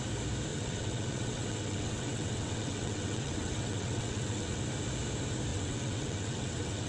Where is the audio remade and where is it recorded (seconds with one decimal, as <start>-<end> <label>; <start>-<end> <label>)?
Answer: 0.0-0.5 recorded; 0.5-4.6 remade; 4.6-5.5 recorded; 5.5-6.9 remade